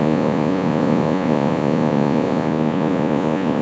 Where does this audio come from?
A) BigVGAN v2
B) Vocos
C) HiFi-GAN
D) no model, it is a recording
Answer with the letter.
B